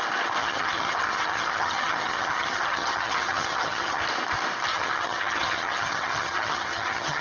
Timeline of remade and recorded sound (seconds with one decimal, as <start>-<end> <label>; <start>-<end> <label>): 0.0-0.4 recorded; 0.4-4.0 remade; 4.0-4.7 recorded; 4.7-7.2 remade